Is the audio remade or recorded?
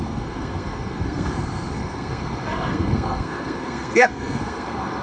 remade